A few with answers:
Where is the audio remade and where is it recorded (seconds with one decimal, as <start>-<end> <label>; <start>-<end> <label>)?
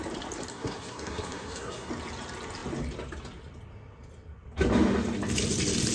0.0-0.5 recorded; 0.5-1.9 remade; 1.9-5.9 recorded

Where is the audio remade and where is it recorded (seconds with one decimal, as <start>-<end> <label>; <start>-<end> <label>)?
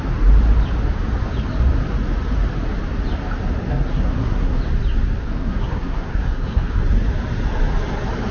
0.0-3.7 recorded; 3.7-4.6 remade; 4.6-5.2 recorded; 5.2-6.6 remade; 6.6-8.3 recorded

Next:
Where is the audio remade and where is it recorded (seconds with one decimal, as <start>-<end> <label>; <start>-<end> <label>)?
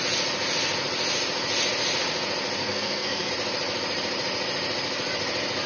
0.0-2.6 recorded; 2.6-3.3 remade; 3.3-5.7 recorded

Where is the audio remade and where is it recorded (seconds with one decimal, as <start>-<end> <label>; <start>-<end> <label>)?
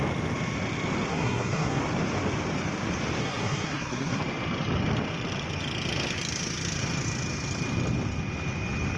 0.0-1.1 recorded; 1.1-1.8 remade; 1.8-3.2 recorded; 3.2-4.2 remade; 4.2-9.0 recorded